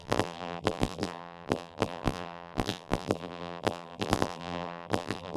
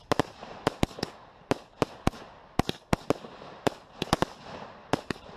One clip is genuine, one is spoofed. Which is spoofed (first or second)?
first